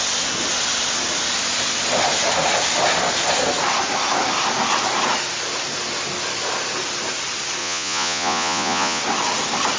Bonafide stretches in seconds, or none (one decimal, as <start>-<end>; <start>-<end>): 0.0-7.6; 9.0-9.8

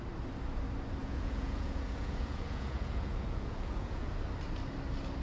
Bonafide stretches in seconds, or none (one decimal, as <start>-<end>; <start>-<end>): 0.0-1.0; 4.1-5.2

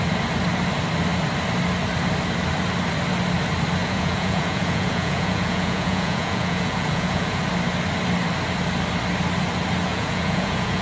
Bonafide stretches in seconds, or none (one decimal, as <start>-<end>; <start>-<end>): 0.0-3.8; 7.4-9.9

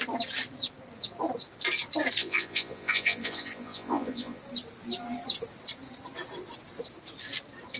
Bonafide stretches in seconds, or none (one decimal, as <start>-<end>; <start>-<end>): 0.0-2.2; 4.4-7.8

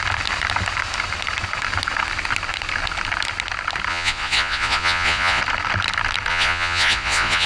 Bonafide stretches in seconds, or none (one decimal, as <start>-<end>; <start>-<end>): 0.0-3.9; 5.4-6.3

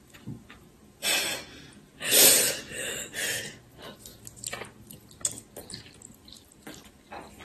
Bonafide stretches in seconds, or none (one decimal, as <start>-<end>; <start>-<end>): 0.0-7.4